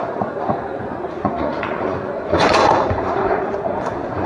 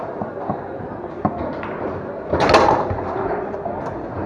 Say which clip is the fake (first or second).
first